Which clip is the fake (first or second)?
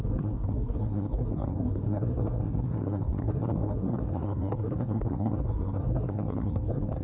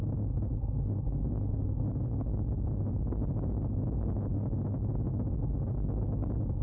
first